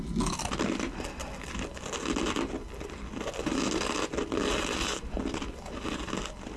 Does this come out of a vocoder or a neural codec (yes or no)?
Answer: no